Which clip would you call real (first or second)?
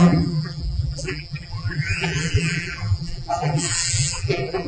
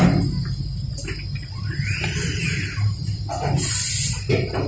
second